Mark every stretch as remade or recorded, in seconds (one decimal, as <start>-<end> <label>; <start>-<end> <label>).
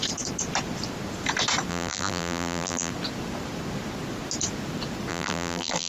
0.0-1.7 recorded; 1.7-2.9 remade; 2.9-5.1 recorded; 5.1-5.9 remade